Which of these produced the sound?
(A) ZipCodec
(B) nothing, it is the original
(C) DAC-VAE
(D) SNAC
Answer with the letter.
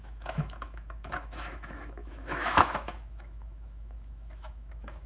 C